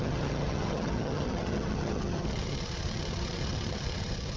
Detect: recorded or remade remade